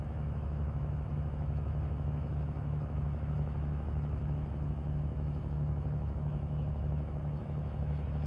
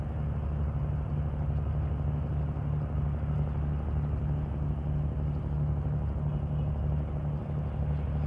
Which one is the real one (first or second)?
second